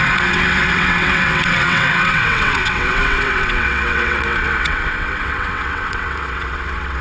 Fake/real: fake